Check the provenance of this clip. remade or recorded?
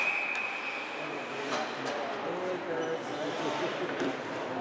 recorded